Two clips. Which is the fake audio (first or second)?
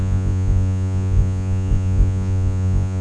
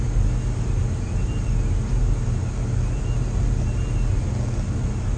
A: first